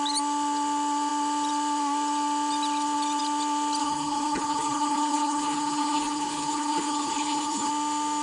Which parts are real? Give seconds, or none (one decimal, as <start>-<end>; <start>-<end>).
0.0-3.8; 7.7-8.2